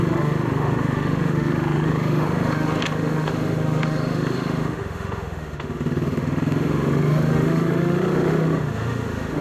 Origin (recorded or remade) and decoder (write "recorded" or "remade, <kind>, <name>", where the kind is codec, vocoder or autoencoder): remade, autoencoder, DAC-VAE